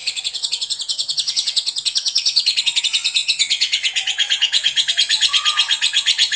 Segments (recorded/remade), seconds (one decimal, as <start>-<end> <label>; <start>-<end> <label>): 0.0-6.4 remade